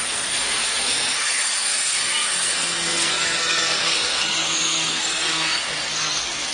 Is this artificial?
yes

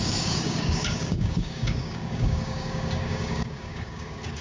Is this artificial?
yes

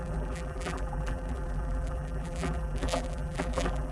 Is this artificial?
yes